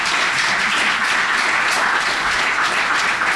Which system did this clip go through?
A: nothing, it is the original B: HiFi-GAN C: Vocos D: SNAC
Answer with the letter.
A